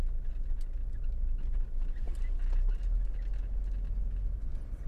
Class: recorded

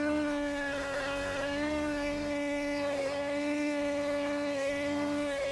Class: remade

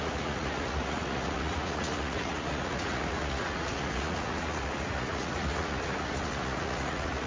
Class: remade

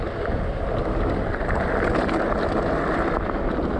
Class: recorded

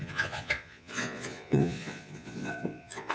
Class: remade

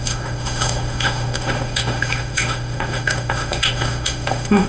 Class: remade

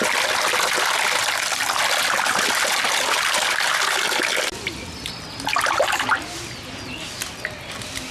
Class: recorded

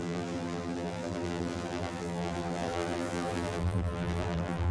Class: remade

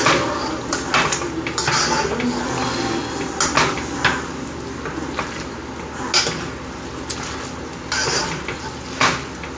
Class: recorded